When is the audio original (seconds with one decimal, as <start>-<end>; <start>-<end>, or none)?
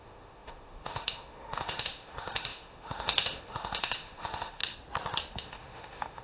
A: 4.6-5.3